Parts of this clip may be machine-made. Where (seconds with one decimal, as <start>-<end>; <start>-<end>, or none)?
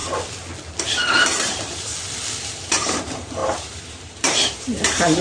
0.8-1.9; 2.4-5.2